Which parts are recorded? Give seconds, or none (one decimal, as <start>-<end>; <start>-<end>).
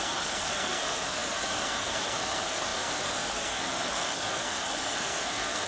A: none